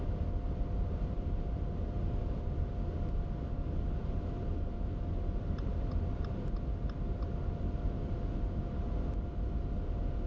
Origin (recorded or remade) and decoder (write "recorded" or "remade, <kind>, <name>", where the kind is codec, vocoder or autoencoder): recorded